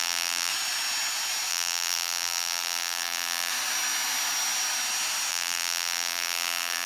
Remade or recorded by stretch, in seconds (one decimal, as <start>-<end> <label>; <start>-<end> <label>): 0.0-0.5 remade; 0.5-1.5 recorded; 1.5-3.5 remade; 3.5-5.3 recorded; 5.3-6.9 remade